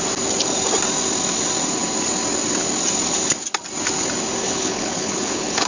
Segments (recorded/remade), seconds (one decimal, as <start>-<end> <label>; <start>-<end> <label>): 0.0-4.4 recorded; 4.4-5.7 remade

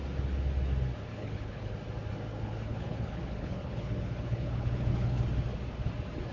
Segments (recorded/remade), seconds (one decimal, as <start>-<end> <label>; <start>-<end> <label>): 0.0-1.1 recorded; 1.1-1.7 remade; 1.7-2.3 recorded; 2.3-5.2 remade; 5.2-6.3 recorded

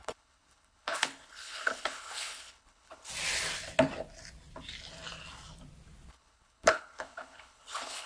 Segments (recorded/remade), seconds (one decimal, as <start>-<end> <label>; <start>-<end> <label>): 0.0-3.1 remade; 3.1-6.1 recorded; 6.1-8.1 remade

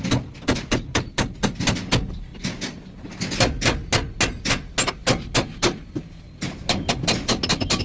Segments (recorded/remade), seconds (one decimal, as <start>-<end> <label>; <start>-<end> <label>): 0.0-7.8 recorded

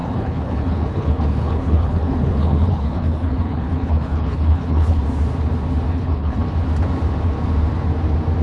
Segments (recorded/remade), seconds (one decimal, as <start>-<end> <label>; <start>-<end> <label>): 0.0-5.0 remade; 5.0-5.9 recorded; 5.9-6.4 remade; 6.4-8.4 recorded

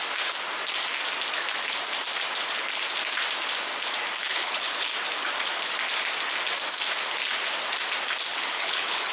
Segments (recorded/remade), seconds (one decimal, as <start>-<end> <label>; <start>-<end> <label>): 0.0-4.3 recorded; 4.3-4.9 remade; 4.9-8.3 recorded; 8.3-9.1 remade

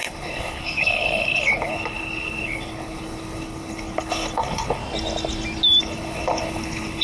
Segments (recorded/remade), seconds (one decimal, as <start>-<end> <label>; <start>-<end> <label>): 0.0-4.8 remade; 4.8-5.8 recorded; 5.8-7.0 remade